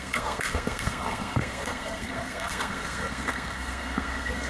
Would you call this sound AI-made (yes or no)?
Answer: yes